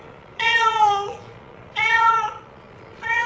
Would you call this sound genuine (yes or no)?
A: no